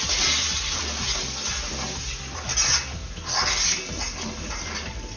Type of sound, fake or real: real